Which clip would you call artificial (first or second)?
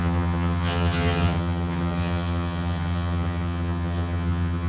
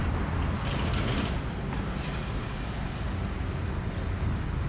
first